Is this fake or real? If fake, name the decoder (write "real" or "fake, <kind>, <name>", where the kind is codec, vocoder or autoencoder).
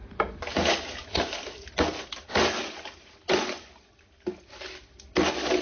real